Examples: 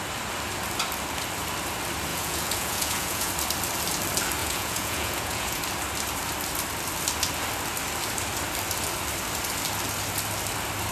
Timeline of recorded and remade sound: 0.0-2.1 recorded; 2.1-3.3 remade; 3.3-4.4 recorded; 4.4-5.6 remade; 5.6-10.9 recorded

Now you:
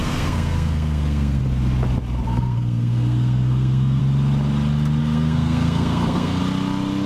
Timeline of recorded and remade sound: 0.0-1.4 remade; 1.4-2.3 recorded; 2.3-4.0 remade; 4.0-5.0 recorded; 5.0-6.4 remade; 6.4-7.1 recorded

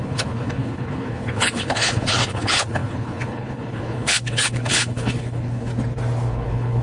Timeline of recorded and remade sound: 0.0-5.7 remade; 5.7-6.3 recorded; 6.3-6.8 remade

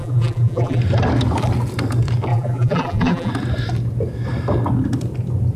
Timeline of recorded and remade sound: 0.0-0.8 remade; 0.8-2.3 recorded; 2.3-3.3 remade; 3.3-5.6 recorded

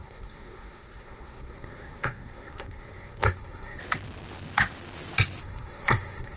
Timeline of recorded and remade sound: 0.0-3.8 remade; 3.8-5.4 recorded; 5.4-6.4 remade

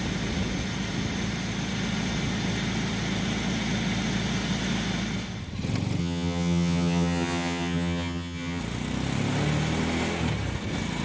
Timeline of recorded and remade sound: 0.0-6.0 recorded; 6.0-8.6 remade; 8.6-11.0 recorded

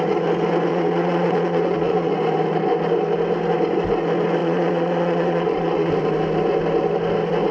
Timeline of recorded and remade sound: 0.0-0.7 recorded; 0.7-2.1 remade; 2.1-4.4 recorded; 4.4-5.9 remade; 5.9-7.5 recorded

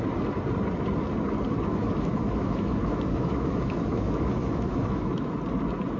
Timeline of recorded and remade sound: 0.0-1.7 recorded; 1.7-5.3 remade; 5.3-6.0 recorded